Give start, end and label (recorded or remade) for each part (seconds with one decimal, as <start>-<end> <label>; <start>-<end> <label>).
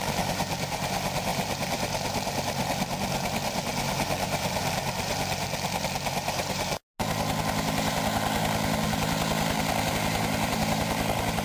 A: 0.0-6.8 remade; 6.8-9.9 recorded; 9.9-11.4 remade